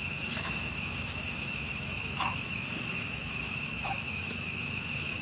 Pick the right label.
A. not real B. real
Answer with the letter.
A